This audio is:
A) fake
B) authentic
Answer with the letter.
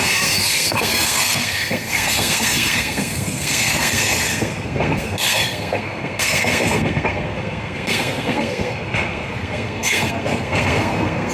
A